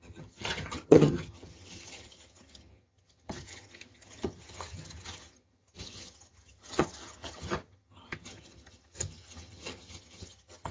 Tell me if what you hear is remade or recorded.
remade